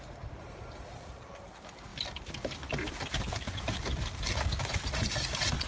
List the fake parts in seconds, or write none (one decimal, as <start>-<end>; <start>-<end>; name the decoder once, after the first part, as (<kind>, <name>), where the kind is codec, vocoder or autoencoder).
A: none